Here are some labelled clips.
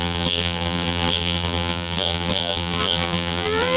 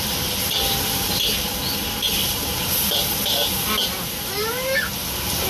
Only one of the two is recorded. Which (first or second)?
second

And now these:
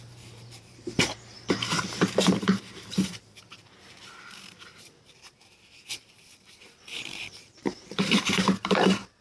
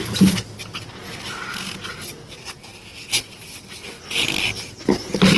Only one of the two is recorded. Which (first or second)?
second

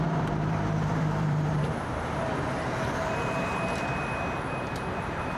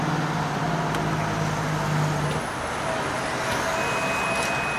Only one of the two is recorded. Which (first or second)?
second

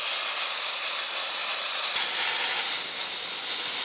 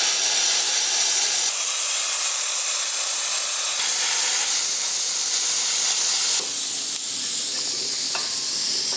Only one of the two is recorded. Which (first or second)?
second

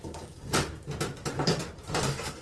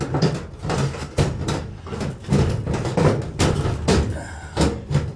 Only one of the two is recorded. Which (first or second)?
second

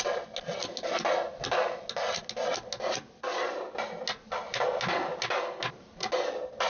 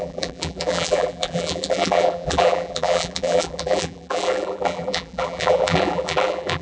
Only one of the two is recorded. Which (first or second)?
first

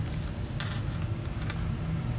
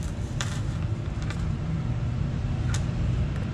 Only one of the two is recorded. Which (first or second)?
first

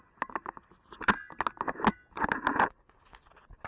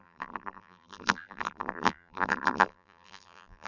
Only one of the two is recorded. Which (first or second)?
first